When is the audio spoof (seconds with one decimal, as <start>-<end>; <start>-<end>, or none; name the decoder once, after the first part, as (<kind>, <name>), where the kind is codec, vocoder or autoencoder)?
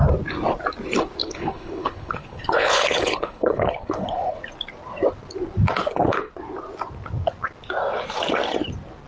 1.2-4.4 (codec, HILCodec); 5.8-6.3